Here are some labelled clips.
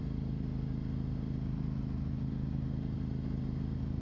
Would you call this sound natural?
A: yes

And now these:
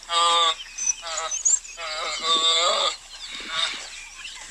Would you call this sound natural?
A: yes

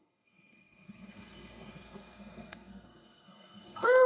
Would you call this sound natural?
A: no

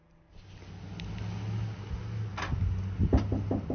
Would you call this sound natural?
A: yes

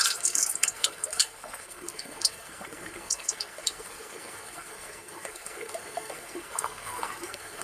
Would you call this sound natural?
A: no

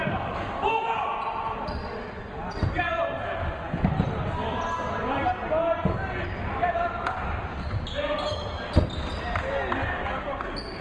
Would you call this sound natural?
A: yes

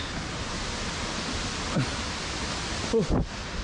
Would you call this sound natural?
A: yes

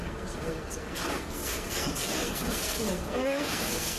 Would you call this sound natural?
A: no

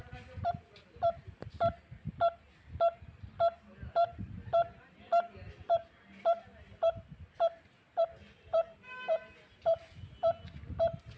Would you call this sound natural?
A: yes